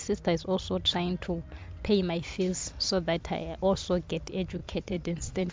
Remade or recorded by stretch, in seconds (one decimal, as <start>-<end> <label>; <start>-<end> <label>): 0.0-4.6 recorded; 4.6-5.5 remade